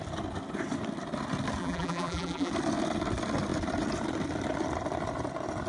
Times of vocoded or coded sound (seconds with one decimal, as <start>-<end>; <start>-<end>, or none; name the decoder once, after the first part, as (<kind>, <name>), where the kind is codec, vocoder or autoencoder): 1.6-2.5 (vocoder, BigVGAN v2)